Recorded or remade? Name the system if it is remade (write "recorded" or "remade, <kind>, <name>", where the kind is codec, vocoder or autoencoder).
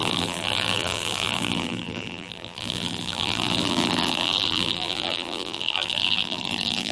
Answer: remade, vocoder, BigVGAN v2